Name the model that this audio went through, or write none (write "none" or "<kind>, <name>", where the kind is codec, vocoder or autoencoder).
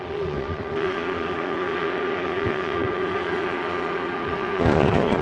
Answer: vocoder, Vocos